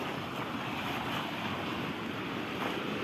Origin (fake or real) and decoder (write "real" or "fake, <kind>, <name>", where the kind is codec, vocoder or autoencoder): real